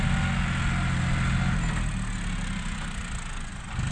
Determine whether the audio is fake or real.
real